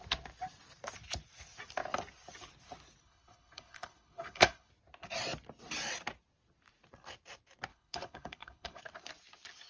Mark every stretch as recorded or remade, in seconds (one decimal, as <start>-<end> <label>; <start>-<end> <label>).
0.0-3.0 recorded; 3.0-4.7 remade; 4.7-7.7 recorded; 7.7-8.8 remade; 8.8-9.7 recorded